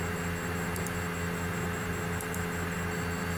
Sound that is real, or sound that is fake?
real